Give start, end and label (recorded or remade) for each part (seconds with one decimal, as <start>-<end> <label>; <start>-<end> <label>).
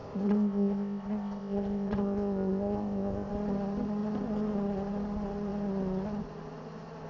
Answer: 0.0-3.3 remade; 3.3-7.1 recorded